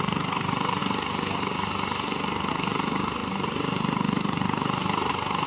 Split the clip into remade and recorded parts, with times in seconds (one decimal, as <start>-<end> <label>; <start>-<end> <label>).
0.0-0.8 remade; 0.8-2.5 recorded; 2.5-5.5 remade